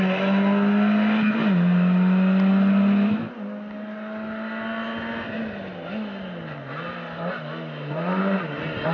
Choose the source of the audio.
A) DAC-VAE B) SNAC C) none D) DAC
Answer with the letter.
C